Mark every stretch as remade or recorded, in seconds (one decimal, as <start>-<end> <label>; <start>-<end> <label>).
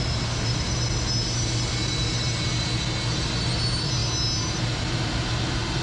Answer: 0.0-5.8 recorded